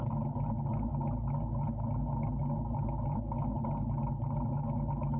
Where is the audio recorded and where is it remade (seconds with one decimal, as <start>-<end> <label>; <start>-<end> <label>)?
0.0-5.2 recorded